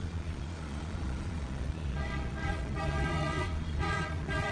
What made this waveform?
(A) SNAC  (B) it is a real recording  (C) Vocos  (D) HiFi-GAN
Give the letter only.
C